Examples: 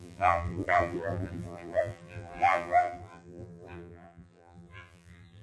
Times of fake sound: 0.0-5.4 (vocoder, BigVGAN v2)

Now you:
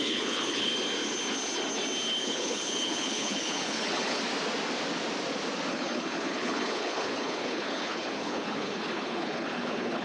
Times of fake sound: 0.0-0.7 (codec, HILCodec); 2.2-4.2; 5.7-10.0